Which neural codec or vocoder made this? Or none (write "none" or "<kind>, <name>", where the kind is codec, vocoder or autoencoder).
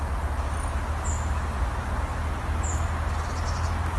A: none